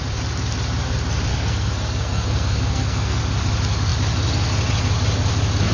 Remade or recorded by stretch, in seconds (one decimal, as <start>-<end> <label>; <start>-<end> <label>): 0.0-1.3 recorded; 1.3-3.2 remade; 3.2-5.7 recorded